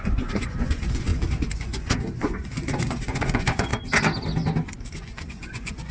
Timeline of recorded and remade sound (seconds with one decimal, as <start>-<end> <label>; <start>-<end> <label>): 0.0-3.7 remade; 3.7-4.9 recorded; 4.9-5.9 remade